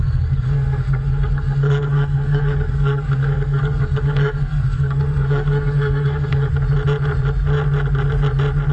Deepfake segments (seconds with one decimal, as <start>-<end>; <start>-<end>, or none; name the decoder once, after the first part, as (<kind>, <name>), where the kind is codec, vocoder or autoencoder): 0.0-6.5 (codec, SNAC)